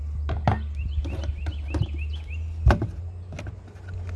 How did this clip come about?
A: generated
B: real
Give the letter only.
B